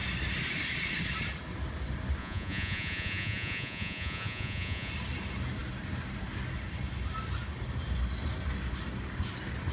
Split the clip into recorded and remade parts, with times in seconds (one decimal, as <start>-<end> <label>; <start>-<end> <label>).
0.0-2.2 recorded; 2.2-4.9 remade; 4.9-9.7 recorded

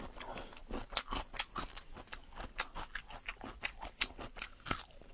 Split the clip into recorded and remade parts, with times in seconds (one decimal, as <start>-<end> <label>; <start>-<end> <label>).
0.0-5.1 recorded

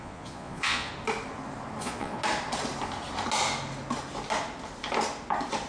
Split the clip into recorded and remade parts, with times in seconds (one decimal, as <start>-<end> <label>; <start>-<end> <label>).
0.0-0.9 remade; 0.9-1.8 recorded; 1.8-2.2 remade; 2.2-5.7 recorded

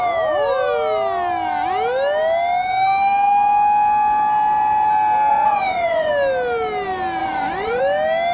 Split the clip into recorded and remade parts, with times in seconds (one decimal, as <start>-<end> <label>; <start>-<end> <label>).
0.0-5.3 recorded; 5.3-6.1 remade; 6.1-7.2 recorded; 7.2-7.8 remade; 7.8-8.3 recorded

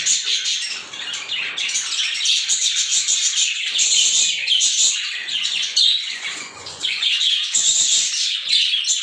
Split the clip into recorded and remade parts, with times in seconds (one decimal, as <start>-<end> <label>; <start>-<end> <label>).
0.0-5.2 recorded; 5.2-7.8 remade; 7.8-9.0 recorded

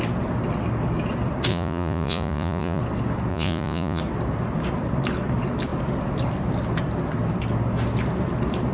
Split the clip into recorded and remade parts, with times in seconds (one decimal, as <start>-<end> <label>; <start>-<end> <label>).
0.0-1.5 recorded; 1.5-2.8 remade; 2.8-3.3 recorded; 3.3-4.0 remade; 4.0-8.7 recorded